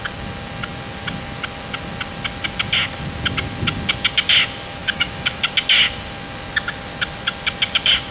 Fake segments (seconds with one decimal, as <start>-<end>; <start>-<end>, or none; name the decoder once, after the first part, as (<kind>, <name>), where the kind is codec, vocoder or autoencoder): 4.8-5.4 (autoencoder, DAC-VAE)